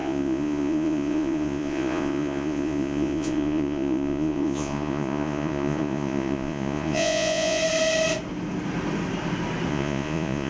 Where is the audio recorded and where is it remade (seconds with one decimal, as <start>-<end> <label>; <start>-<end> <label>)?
0.0-7.6 remade; 7.6-9.7 recorded; 9.7-10.5 remade